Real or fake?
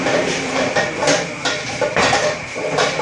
fake